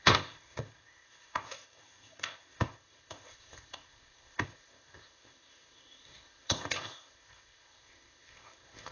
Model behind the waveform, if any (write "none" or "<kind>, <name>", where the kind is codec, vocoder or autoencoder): codec, ZipCodec